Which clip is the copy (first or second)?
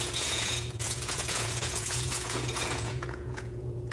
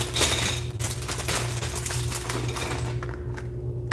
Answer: first